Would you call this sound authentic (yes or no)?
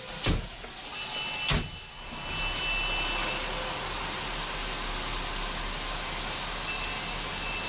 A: yes